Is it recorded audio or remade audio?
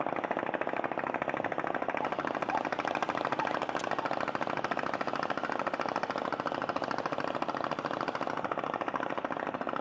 recorded